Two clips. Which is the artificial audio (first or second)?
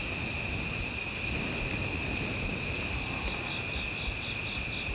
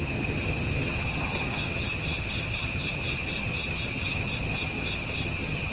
second